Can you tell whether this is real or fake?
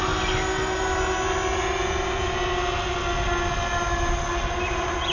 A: real